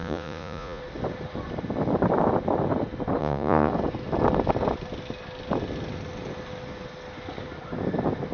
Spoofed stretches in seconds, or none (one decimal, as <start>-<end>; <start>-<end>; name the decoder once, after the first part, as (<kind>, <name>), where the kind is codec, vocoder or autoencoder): 0.0-0.8 (vocoder, Vocos); 3.2-3.7